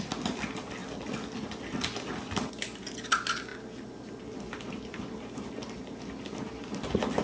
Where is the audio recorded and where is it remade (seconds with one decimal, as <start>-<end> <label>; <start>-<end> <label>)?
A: 0.0-7.2 recorded